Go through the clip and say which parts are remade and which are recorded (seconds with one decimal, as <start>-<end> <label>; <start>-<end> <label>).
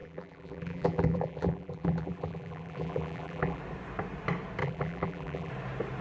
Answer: 0.0-3.6 remade; 3.6-4.6 recorded; 4.6-5.5 remade; 5.5-6.0 recorded